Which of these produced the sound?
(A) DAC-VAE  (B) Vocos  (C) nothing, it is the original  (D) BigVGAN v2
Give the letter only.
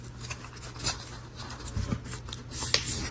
C